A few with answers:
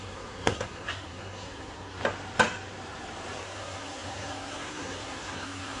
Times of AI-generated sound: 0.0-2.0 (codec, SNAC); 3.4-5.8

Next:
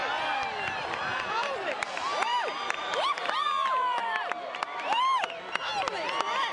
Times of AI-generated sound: 2.0-6.5 (vocoder, BigVGAN v2)

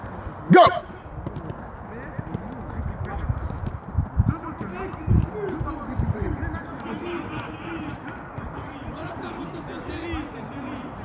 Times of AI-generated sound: none